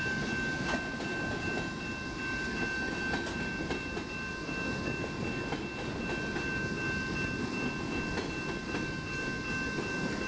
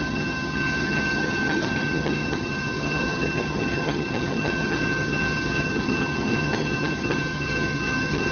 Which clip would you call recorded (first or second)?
first